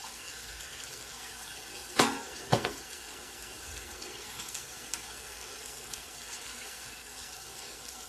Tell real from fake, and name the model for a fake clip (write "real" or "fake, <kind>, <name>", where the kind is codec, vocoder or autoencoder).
fake, codec, SNAC